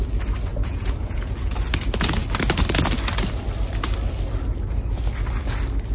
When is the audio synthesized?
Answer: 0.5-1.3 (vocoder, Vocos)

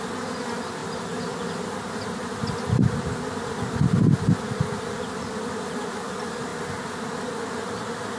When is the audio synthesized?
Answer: none

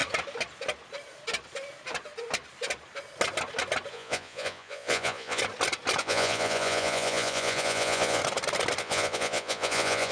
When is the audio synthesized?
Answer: 3.9-5.4 (vocoder, Vocos); 6.0-8.2; 8.8-10.1

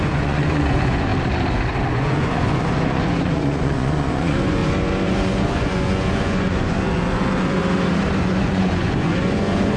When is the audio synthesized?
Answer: 0.0-1.1 (vocoder, Vocos); 1.9-4.6; 5.1-7.6; 8.2-9.8